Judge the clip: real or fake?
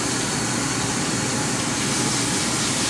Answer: real